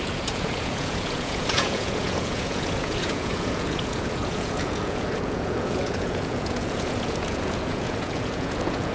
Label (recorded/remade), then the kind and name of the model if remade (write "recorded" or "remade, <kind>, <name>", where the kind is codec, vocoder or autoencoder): remade, vocoder, Vocos